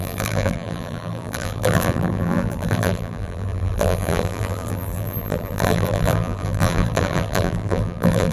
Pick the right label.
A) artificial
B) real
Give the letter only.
A